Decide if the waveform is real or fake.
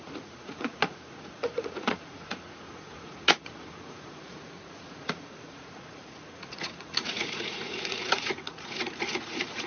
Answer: fake